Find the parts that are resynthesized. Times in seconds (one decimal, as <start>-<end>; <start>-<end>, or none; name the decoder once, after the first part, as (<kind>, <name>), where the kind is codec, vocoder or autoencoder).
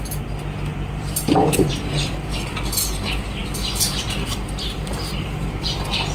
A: 0.7-1.7 (vocoder, BigVGAN v2)